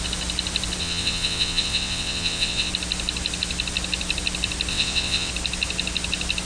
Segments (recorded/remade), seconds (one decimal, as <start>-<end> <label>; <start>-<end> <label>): 0.0-0.8 recorded; 0.8-2.7 remade; 2.7-4.7 recorded; 4.7-5.3 remade; 5.3-6.4 recorded